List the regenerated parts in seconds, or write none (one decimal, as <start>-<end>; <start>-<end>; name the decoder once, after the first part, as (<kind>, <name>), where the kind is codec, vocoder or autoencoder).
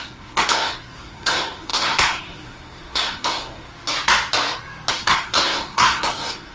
0.0-3.7 (codec, SNAC); 4.9-6.5